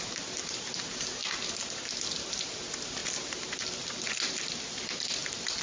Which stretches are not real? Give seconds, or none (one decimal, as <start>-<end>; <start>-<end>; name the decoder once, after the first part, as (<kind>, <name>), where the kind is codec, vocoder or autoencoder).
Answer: none